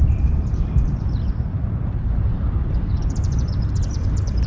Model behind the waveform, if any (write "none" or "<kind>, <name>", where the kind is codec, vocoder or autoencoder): vocoder, BigVGAN v2